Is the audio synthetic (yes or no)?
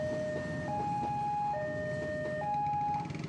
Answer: no